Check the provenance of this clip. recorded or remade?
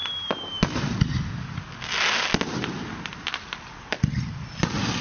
recorded